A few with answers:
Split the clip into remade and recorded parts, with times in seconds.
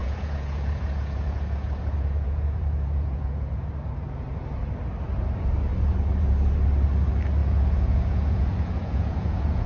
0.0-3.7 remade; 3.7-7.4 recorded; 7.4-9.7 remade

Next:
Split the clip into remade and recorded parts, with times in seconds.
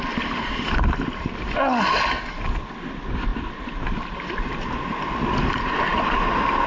0.0-6.7 recorded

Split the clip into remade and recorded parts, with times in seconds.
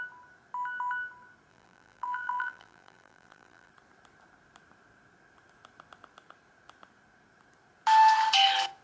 0.0-1.5 recorded; 1.5-3.7 remade; 3.7-8.8 recorded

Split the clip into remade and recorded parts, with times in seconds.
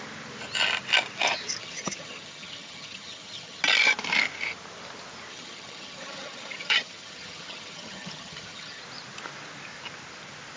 0.0-1.6 recorded; 1.6-3.6 remade; 3.6-5.3 recorded; 5.3-8.8 remade; 8.8-10.6 recorded